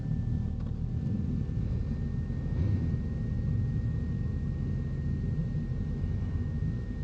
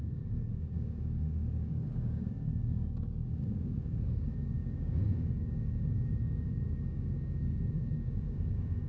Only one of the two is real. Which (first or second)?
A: first